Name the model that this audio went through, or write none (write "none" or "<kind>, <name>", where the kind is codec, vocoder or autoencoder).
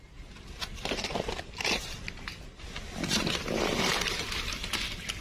none